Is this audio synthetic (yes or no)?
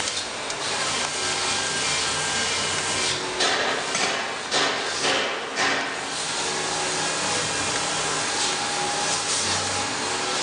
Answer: no